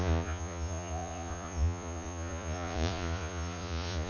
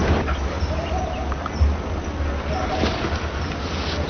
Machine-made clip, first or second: first